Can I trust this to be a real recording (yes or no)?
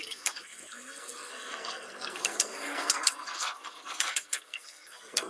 no